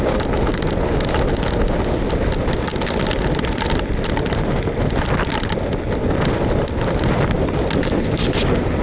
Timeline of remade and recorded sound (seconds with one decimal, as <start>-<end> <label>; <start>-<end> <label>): 0.0-8.8 recorded